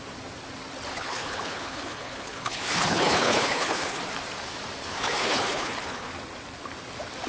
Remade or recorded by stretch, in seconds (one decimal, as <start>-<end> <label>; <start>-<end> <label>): 0.0-0.9 recorded; 0.9-4.0 remade; 4.0-4.8 recorded; 4.8-6.1 remade; 6.1-7.3 recorded